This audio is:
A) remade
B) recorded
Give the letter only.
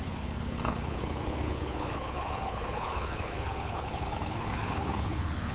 A